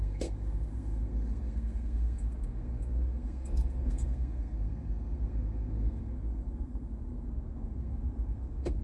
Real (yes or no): no